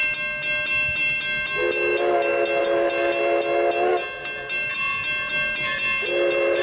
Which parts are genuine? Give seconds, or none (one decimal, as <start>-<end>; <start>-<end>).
0.0-6.6